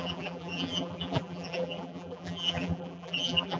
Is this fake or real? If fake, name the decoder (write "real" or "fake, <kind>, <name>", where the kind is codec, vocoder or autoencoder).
fake, vocoder, BigVGAN v2